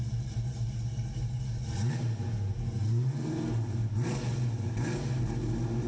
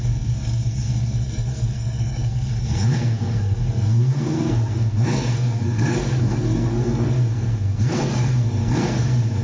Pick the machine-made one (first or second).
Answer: second